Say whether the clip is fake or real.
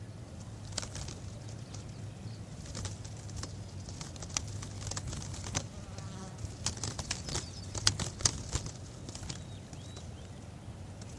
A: real